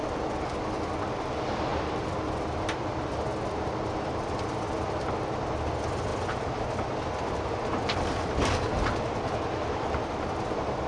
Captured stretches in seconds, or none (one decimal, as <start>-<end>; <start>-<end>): 0.0-1.7; 4.6-6.1; 7.0-10.9